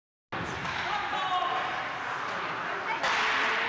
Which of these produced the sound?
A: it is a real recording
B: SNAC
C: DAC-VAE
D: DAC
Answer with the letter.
A